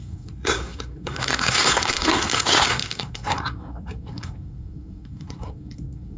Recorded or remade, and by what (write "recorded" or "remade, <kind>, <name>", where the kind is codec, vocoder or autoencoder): remade, codec, SNAC